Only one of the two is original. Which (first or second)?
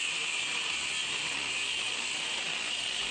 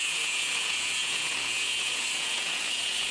first